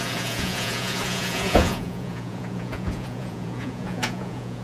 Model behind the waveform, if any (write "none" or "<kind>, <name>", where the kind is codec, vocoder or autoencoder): vocoder, Vocos